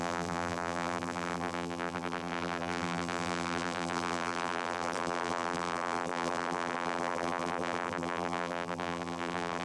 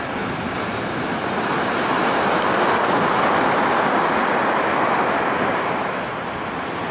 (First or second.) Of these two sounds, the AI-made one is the first